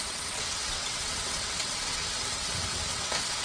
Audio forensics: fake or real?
fake